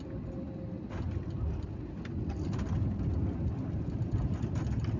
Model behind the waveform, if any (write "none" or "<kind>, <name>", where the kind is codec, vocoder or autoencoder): none